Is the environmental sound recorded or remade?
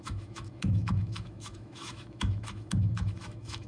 remade